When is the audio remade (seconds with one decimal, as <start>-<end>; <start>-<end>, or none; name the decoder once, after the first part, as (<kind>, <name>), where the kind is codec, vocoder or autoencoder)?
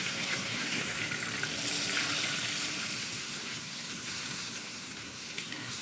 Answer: 0.0-1.0 (codec, SNAC); 3.0-5.8